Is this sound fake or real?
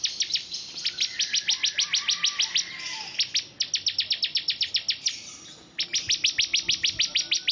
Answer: real